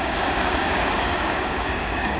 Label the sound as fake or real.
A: fake